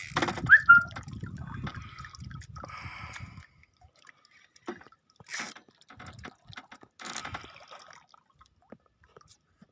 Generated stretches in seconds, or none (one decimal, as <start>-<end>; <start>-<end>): none